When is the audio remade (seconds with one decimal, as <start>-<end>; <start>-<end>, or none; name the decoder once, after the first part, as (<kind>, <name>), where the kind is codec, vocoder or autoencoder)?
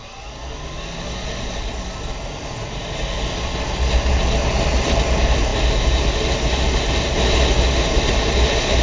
none